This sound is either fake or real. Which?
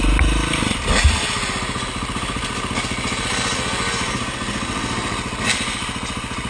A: real